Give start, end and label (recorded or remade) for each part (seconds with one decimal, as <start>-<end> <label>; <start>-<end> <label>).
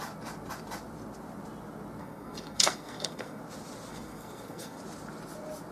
0.0-2.0 recorded; 2.0-3.4 remade; 3.4-3.9 recorded; 3.9-4.8 remade; 4.8-5.7 recorded